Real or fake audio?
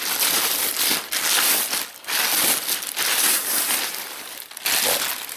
real